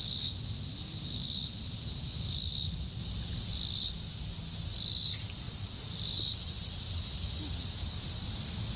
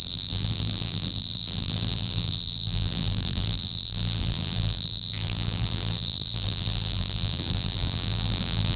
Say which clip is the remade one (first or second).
second